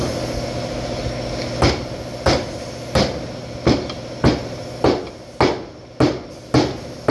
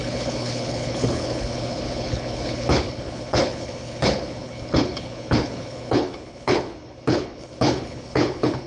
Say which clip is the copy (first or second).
second